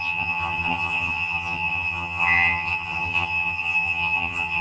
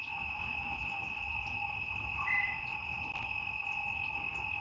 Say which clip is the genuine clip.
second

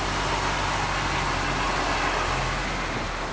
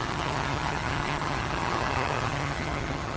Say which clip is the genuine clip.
first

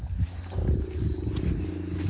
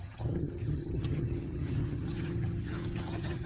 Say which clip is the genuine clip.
first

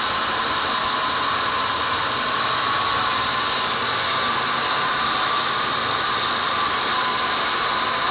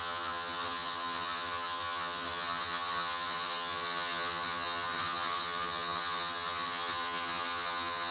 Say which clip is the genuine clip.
first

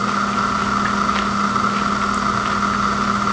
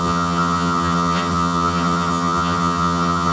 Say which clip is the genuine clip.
first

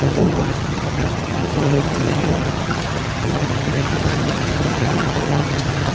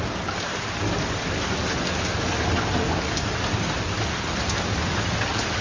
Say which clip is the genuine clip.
second